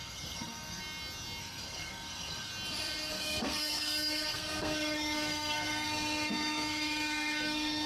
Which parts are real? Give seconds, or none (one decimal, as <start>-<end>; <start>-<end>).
0.8-1.4; 2.5-3.1